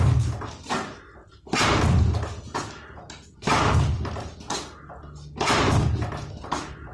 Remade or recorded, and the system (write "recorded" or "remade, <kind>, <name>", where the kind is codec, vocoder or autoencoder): recorded